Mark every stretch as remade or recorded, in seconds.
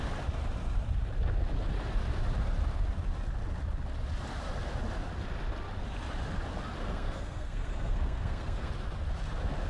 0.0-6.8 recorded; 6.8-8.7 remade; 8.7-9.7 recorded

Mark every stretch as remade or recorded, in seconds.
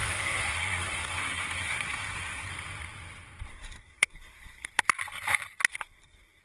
0.0-2.5 remade; 2.5-3.5 recorded; 3.5-4.7 remade; 4.7-5.7 recorded; 5.7-6.4 remade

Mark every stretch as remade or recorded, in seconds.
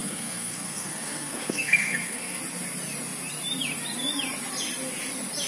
0.0-2.4 remade; 2.4-5.5 recorded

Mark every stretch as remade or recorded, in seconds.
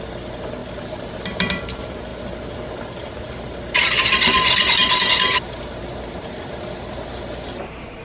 0.0-8.0 recorded